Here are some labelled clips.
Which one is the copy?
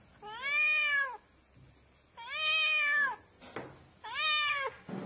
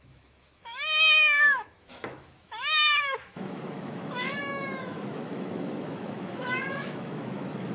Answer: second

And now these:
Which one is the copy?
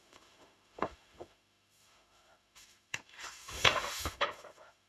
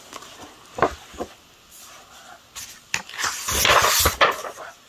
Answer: first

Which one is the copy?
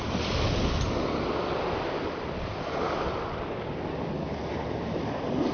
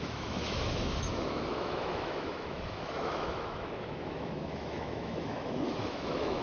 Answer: second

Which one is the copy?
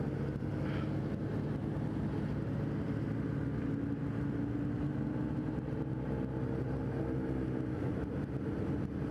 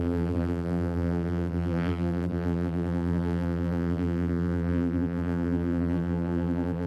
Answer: second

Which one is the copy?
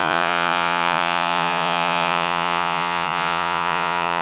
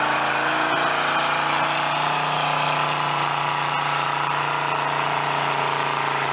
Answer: first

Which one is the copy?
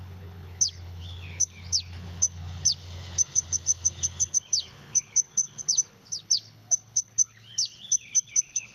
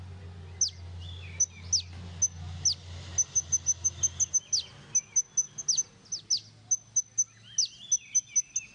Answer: first